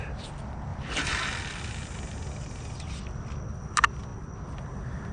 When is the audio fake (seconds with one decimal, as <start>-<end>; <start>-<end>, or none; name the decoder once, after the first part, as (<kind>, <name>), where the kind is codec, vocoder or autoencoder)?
0.7-1.3 (vocoder, BigVGAN v2)